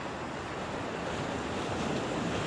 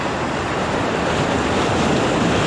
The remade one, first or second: second